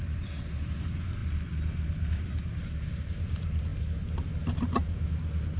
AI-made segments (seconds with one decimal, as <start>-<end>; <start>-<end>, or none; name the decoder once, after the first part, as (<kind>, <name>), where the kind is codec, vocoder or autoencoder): none